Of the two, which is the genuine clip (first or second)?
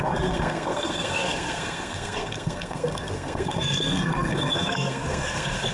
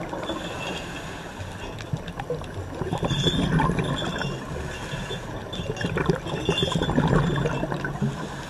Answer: second